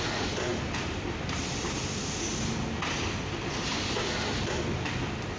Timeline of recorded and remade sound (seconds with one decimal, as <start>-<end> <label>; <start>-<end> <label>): 0.0-5.4 recorded